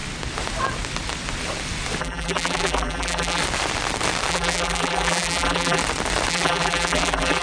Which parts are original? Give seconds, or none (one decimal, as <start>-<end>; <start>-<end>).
0.0-2.0; 3.4-4.3; 5.8-6.3